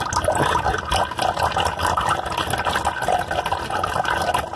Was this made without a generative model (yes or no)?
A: yes